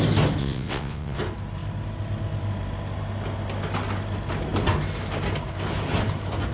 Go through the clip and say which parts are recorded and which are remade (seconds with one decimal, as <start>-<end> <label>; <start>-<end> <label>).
0.0-0.4 recorded; 0.4-1.2 remade; 1.2-6.5 recorded